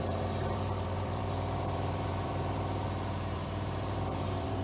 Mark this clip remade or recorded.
remade